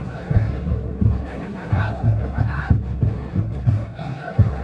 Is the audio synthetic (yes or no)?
yes